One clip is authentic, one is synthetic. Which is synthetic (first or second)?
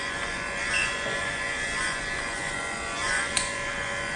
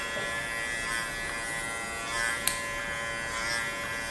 first